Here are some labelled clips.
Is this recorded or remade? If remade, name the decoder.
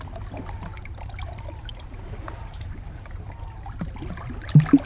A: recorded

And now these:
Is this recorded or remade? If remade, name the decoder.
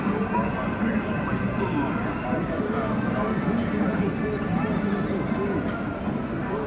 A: recorded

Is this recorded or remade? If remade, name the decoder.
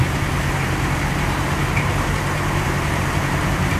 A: remade, vocoder, BigVGAN v2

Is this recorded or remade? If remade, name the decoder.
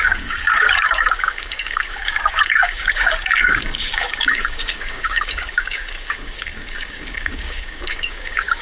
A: remade, codec, DAC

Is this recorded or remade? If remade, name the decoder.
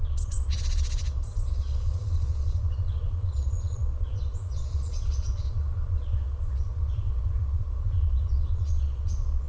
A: remade, vocoder, Vocos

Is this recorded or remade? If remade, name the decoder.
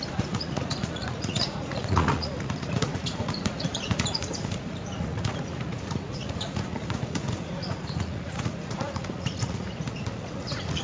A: remade, vocoder, Vocos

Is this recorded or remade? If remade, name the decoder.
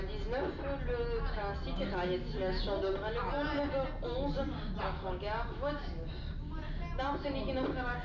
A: recorded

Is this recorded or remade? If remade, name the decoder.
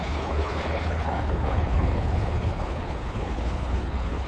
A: remade, codec, HILCodec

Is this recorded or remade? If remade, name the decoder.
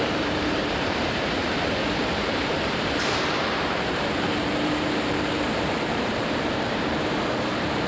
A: remade, vocoder, BigVGAN v2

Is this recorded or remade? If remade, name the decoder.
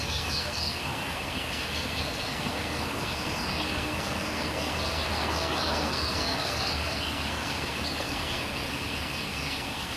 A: remade, codec, SNAC